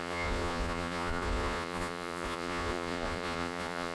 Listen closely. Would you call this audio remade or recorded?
remade